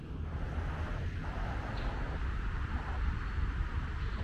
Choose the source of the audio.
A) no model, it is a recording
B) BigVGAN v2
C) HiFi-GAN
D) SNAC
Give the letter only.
A